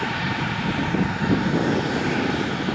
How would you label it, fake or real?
real